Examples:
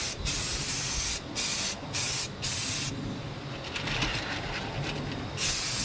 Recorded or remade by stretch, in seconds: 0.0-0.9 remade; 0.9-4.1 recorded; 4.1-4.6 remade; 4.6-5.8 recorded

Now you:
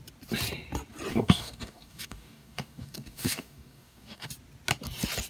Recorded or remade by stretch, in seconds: 0.0-1.1 recorded; 1.1-4.3 remade; 4.3-5.3 recorded

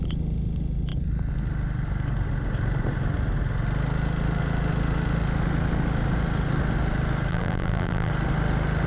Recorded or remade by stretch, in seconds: 0.0-7.3 recorded; 7.3-8.1 remade; 8.1-8.9 recorded

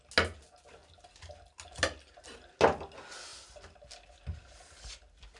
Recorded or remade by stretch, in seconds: 0.0-5.4 recorded

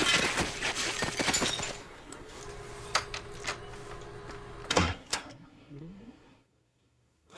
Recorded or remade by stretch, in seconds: 0.0-1.8 recorded; 1.8-2.4 remade; 2.4-4.7 recorded; 4.7-7.4 remade